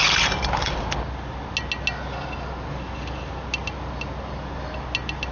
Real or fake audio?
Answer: real